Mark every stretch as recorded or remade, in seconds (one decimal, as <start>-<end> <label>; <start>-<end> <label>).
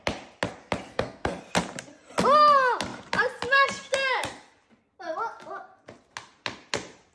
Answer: 0.0-0.9 recorded; 0.9-1.4 remade; 1.4-7.1 recorded